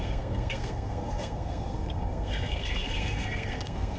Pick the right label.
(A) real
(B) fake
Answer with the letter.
B